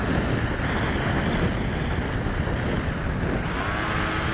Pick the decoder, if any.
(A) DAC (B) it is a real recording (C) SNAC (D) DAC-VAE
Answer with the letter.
B